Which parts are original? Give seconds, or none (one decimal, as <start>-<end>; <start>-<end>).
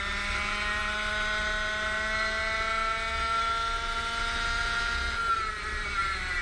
0.0-6.4